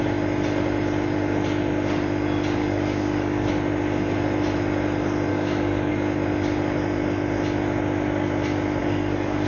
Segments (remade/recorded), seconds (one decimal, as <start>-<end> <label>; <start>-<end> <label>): 0.0-2.6 recorded; 2.6-3.5 remade; 3.5-5.3 recorded; 5.3-5.9 remade; 5.9-8.8 recorded; 8.8-9.5 remade